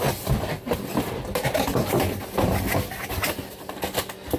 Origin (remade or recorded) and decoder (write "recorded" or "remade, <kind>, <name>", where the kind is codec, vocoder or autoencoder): recorded